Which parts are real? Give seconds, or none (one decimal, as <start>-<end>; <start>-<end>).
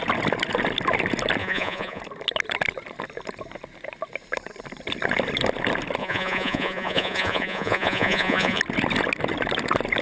0.0-1.4; 2.0-6.0; 8.6-10.0